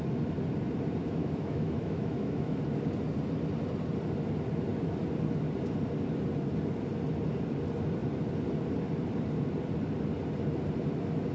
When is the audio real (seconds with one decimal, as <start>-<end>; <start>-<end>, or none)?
0.0-1.0; 2.6-11.3